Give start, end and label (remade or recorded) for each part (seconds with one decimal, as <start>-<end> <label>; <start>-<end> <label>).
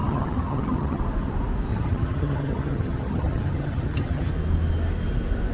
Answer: 0.0-1.0 remade; 1.0-1.7 recorded; 1.7-4.3 remade; 4.3-5.5 recorded